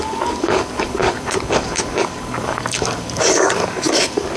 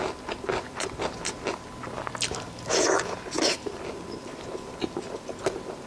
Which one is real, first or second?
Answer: second